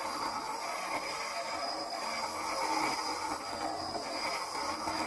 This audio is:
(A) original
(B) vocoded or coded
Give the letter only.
A